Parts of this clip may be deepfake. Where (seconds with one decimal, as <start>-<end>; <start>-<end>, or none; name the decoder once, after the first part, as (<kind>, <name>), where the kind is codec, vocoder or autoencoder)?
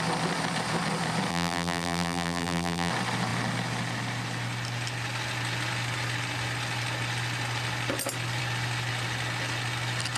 1.3-2.9 (vocoder, BigVGAN v2)